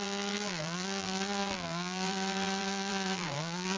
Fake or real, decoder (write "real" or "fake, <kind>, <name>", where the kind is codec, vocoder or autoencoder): fake, vocoder, BigVGAN v2